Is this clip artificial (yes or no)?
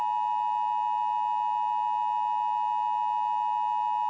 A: no